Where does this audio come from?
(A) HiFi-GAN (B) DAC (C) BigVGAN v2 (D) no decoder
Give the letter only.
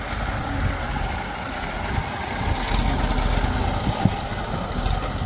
D